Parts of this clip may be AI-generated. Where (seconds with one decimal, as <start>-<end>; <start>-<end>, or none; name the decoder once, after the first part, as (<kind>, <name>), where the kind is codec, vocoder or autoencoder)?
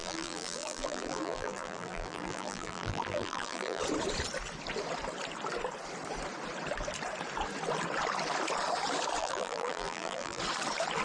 0.0-3.8 (vocoder, BigVGAN v2); 9.2-10.4